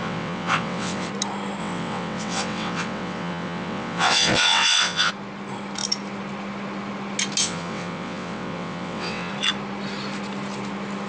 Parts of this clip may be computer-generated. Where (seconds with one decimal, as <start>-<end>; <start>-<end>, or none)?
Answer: 0.0-1.1; 1.6-5.1; 7.4-9.3